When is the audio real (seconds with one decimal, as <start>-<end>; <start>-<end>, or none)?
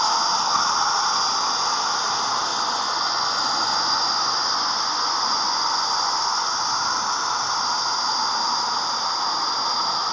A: 0.0-2.5; 6.5-10.1